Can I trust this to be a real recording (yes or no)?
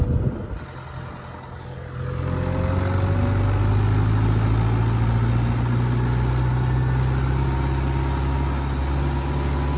yes